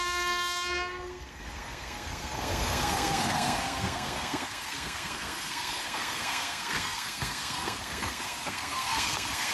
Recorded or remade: remade